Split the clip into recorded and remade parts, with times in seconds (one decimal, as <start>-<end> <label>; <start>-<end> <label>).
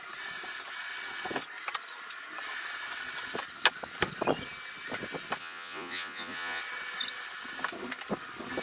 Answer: 0.0-5.4 recorded; 5.4-6.6 remade; 6.6-8.6 recorded